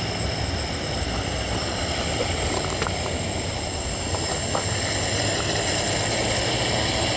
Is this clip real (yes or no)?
no